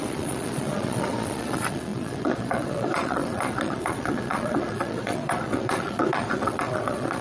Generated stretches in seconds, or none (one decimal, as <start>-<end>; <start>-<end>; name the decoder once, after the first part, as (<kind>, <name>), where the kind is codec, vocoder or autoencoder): 0.0-7.2 (vocoder, Vocos)